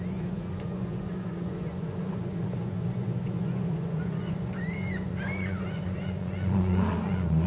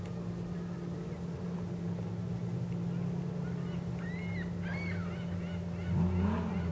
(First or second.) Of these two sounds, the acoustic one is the second